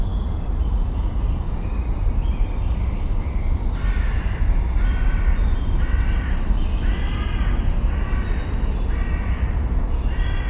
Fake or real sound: real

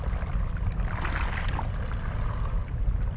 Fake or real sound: real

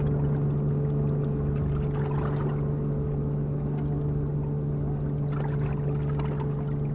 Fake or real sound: real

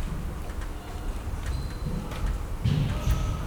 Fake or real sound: real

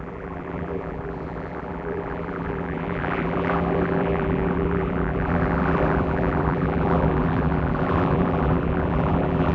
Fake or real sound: fake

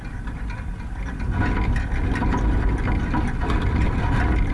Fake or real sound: real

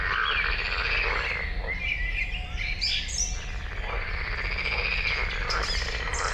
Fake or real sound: real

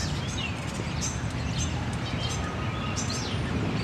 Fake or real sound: real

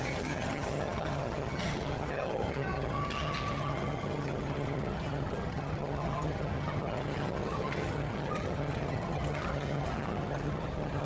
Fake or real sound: fake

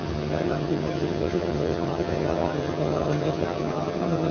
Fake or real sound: fake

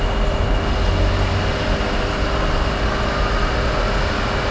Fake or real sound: real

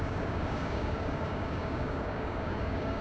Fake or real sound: fake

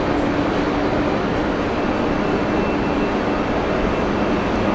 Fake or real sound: real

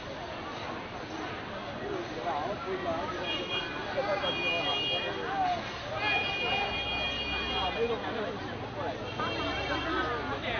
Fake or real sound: real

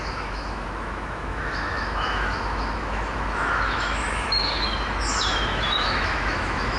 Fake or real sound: fake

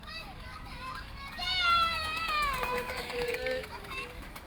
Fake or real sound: fake